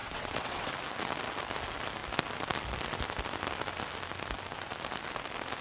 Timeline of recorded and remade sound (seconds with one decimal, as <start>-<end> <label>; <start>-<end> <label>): 0.0-0.7 remade; 0.7-5.6 recorded